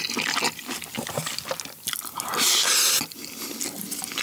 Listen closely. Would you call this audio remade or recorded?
recorded